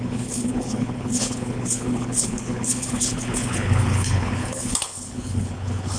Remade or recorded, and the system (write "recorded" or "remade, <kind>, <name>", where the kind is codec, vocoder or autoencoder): remade, codec, HILCodec